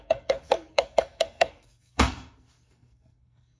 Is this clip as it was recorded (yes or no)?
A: no